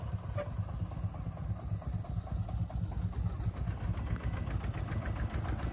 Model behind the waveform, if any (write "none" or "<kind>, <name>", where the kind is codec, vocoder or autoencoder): none